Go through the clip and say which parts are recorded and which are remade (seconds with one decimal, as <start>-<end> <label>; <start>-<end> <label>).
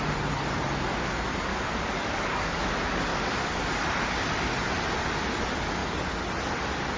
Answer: 0.0-1.5 recorded; 1.5-2.7 remade; 2.7-3.1 recorded; 3.1-3.7 remade; 3.7-7.0 recorded